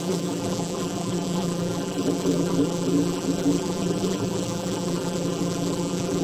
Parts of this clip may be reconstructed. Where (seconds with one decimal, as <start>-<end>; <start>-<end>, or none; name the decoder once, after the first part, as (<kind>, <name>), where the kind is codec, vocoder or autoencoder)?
0.0-6.2 (vocoder, BigVGAN v2)